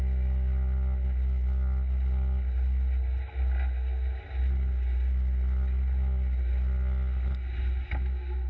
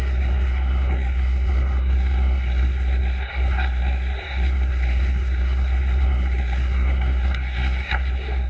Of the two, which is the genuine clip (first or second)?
first